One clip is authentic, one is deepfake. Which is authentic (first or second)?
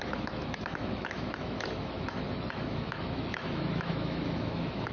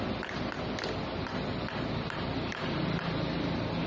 second